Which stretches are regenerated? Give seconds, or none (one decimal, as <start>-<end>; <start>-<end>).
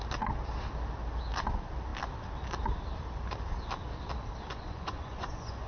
4.5-5.7